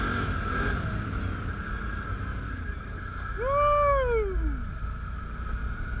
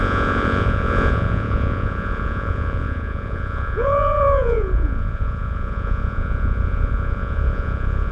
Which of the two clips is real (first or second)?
first